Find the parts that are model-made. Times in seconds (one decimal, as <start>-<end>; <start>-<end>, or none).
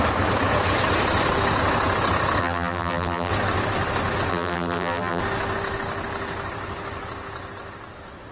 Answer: 2.4-3.3; 4.3-5.2